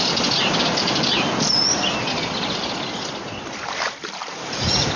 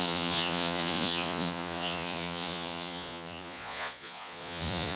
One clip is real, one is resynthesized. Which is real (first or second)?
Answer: first